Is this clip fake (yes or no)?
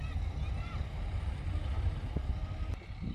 no